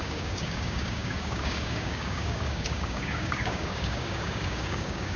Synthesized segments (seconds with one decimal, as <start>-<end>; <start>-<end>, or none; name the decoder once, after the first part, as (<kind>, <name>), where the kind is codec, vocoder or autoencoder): 0.0-5.2 (codec, DAC)